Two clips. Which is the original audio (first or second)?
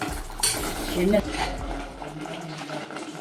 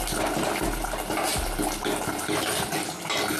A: second